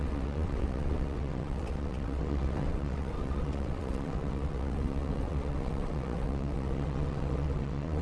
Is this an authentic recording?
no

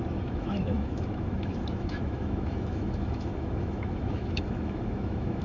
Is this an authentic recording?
no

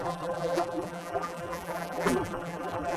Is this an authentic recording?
no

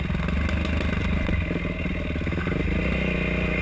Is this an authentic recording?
yes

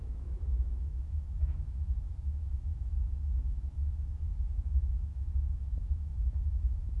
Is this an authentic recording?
no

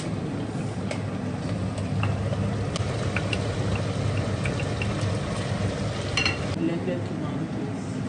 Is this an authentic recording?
yes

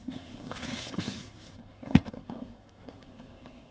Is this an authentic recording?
no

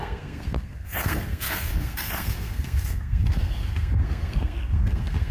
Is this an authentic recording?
no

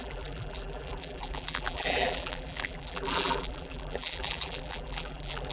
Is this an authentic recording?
no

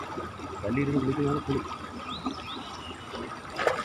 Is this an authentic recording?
yes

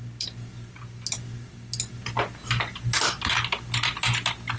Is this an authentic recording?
yes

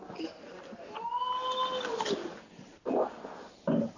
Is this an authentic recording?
yes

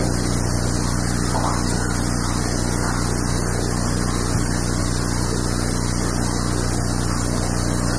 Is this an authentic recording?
yes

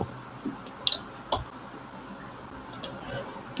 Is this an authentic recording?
yes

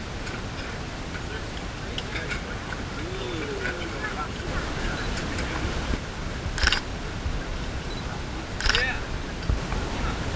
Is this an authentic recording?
yes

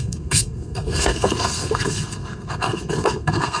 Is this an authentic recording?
no